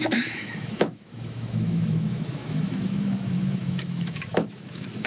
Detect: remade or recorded remade